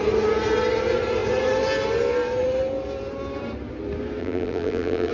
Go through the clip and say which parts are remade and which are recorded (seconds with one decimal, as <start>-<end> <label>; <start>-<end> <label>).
0.0-4.2 recorded; 4.2-5.1 remade